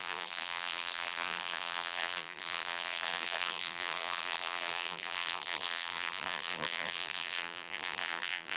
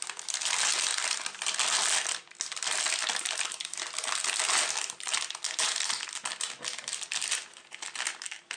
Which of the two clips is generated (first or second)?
first